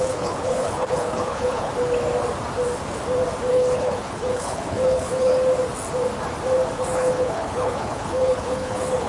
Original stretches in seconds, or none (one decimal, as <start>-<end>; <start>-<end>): 1.7-3.5; 5.3-6.8